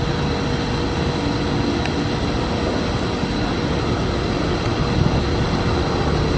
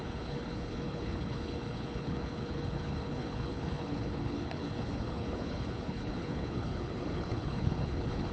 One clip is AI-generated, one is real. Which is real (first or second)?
first